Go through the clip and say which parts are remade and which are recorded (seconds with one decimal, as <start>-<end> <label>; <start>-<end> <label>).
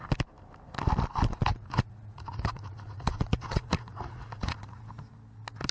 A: 0.0-1.5 recorded; 1.5-4.9 remade; 4.9-5.7 recorded